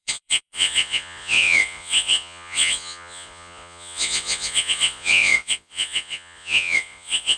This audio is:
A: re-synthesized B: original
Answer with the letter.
A